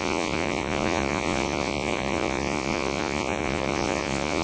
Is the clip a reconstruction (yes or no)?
yes